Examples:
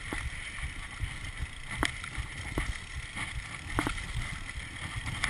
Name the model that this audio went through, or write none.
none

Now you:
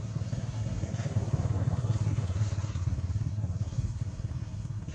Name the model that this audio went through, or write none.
codec, SNAC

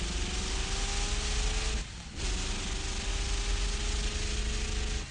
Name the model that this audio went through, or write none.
none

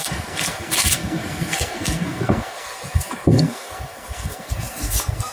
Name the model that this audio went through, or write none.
codec, SNAC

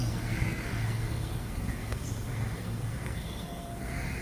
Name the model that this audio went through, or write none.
codec, SNAC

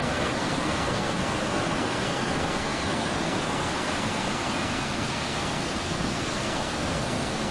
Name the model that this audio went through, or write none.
codec, SNAC